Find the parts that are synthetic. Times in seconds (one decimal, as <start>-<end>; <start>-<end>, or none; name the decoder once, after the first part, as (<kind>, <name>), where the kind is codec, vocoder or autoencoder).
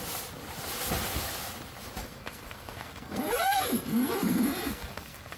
2.0-5.4 (codec, SNAC)